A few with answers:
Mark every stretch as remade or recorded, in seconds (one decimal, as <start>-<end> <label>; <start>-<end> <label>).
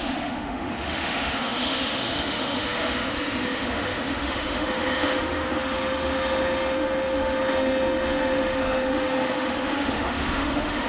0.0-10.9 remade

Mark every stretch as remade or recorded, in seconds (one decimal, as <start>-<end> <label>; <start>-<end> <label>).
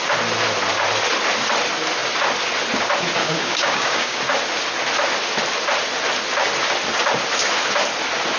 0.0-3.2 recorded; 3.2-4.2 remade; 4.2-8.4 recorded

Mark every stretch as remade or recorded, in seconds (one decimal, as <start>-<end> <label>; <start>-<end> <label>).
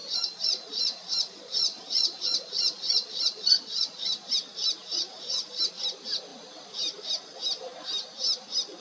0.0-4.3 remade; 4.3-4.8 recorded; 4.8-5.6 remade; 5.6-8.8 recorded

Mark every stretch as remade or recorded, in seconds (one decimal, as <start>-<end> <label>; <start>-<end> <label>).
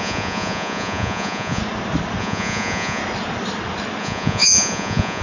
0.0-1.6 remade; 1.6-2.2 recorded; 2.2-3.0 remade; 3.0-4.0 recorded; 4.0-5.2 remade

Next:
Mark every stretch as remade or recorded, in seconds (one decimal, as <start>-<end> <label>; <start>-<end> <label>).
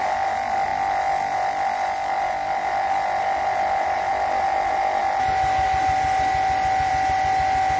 0.0-7.8 recorded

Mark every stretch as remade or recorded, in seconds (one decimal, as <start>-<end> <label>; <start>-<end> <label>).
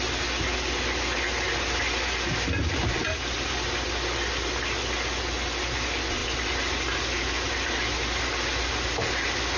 0.0-9.6 recorded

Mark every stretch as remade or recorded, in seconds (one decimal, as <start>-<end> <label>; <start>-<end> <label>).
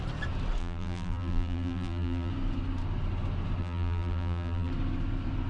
0.0-0.6 recorded; 0.6-2.3 remade; 2.3-3.6 recorded; 3.6-4.7 remade; 4.7-5.5 recorded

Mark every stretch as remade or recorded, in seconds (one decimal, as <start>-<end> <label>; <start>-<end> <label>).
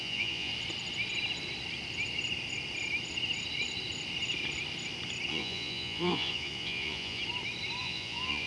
0.0-0.5 remade; 0.5-5.3 recorded; 5.3-7.2 remade; 7.2-7.8 recorded; 7.8-8.5 remade